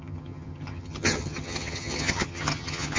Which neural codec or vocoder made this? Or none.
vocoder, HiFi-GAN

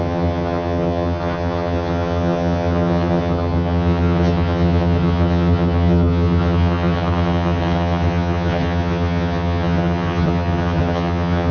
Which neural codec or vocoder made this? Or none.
vocoder, HiFi-GAN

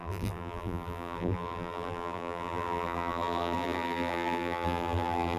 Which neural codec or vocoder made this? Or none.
vocoder, BigVGAN v2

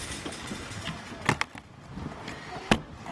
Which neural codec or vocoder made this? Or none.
none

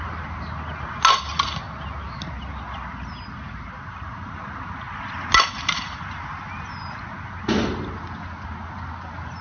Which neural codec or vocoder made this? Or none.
none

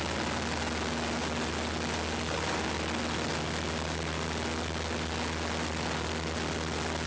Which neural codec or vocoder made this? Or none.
none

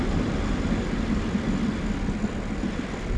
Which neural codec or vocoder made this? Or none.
none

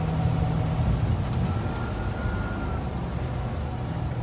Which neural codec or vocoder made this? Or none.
none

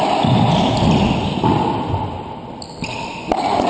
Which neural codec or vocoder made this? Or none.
none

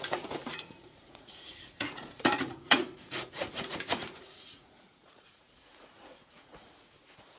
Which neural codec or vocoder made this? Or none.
vocoder, Vocos